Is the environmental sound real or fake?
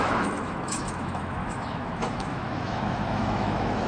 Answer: fake